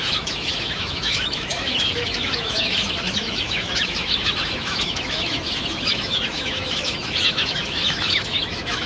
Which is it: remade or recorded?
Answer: remade